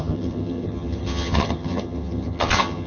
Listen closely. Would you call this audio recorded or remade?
remade